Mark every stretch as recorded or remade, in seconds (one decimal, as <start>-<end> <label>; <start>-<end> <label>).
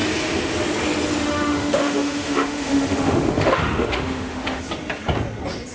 0.0-1.2 recorded; 1.2-4.6 remade; 4.6-5.7 recorded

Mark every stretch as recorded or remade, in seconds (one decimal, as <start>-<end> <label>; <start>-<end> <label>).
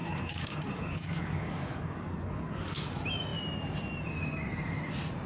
0.0-2.9 remade; 2.9-5.3 recorded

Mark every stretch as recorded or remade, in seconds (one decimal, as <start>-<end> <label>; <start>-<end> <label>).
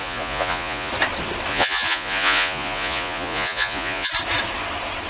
0.0-0.9 remade; 0.9-1.5 recorded; 1.5-4.1 remade; 4.1-5.1 recorded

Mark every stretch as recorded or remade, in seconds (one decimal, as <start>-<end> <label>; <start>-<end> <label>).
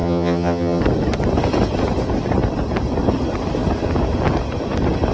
0.0-0.8 remade; 0.8-5.1 recorded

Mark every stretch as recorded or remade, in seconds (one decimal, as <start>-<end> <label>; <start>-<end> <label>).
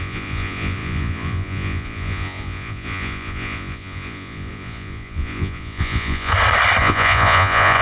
0.0-6.3 remade; 6.3-6.8 recorded; 6.8-7.8 remade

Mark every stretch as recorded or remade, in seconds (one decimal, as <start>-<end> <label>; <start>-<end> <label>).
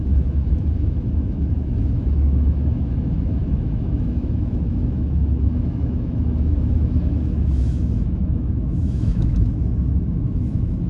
0.0-10.9 remade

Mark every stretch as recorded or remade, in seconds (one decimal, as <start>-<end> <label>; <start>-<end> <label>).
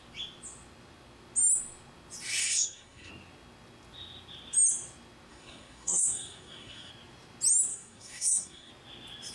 0.0-2.4 recorded; 2.4-3.1 remade; 3.1-5.3 recorded; 5.3-6.9 remade; 6.9-7.7 recorded; 7.7-8.7 remade; 8.7-9.3 recorded